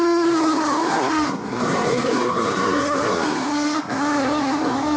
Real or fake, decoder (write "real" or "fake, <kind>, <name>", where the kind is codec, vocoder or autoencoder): fake, codec, SNAC